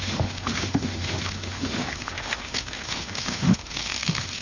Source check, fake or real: fake